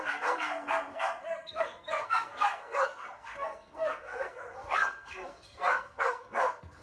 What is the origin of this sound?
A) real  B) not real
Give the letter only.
B